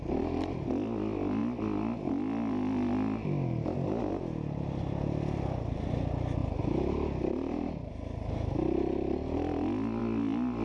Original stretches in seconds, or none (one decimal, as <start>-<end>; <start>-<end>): 0.0-10.6